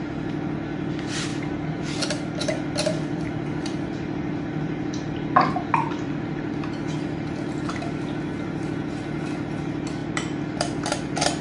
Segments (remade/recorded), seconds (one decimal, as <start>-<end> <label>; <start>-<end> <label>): 0.0-1.3 recorded; 1.3-6.5 remade; 6.5-10.0 recorded; 10.0-10.8 remade; 10.8-11.4 recorded